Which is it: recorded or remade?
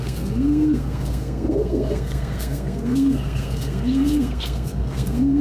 remade